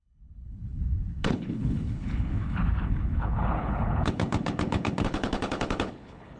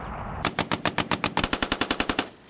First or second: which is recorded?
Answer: second